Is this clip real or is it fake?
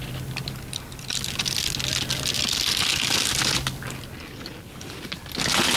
real